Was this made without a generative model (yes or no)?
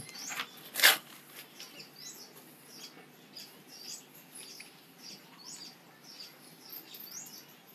yes